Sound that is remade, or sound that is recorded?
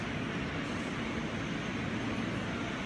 recorded